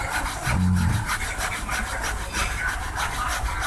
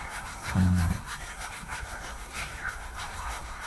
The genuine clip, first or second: first